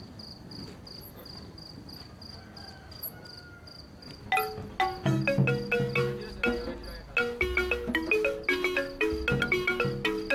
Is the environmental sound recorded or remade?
recorded